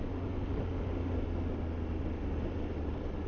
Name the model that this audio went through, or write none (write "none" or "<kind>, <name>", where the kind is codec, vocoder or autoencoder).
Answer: none